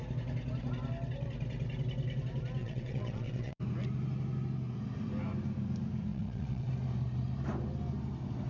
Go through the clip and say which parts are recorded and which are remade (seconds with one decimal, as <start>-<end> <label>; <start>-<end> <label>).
0.0-2.6 recorded; 2.6-3.6 remade; 3.6-6.1 recorded; 6.1-6.7 remade; 6.7-8.5 recorded